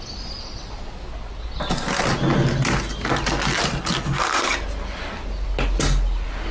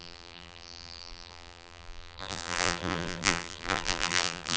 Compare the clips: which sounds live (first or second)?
first